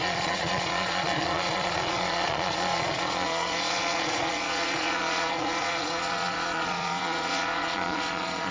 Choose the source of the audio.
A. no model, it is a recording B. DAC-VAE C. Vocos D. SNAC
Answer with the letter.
C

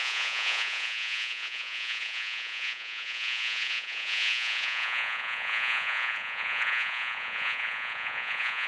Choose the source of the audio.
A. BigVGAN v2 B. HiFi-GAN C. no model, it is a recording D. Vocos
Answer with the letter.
D